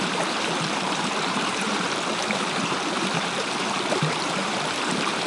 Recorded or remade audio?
remade